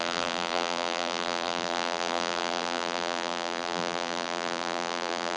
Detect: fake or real fake